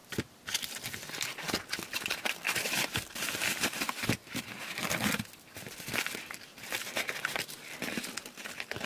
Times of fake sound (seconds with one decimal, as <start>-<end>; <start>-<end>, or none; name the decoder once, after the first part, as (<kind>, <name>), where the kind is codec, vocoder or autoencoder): none